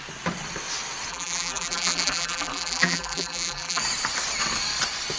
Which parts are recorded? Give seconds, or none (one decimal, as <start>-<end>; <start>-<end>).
0.0-1.1; 3.8-5.2